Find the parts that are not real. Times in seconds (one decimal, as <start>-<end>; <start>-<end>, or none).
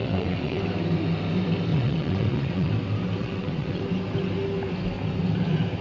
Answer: 0.0-0.6; 1.7-2.7; 3.2-3.8